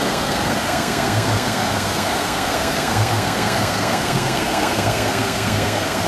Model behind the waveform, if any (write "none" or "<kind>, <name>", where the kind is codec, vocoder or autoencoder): codec, SNAC